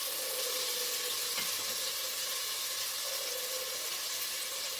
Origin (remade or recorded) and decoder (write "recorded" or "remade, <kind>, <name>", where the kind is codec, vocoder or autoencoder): recorded